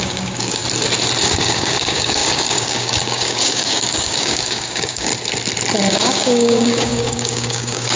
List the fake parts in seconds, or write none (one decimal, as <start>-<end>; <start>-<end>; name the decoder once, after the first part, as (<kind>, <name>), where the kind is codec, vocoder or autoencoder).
0.0-0.6 (codec, DAC); 1.2-5.1; 5.9-8.0